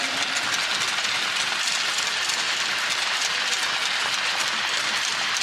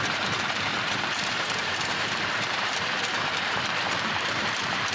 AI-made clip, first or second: second